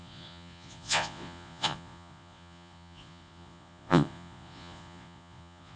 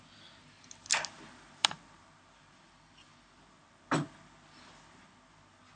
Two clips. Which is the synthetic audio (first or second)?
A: first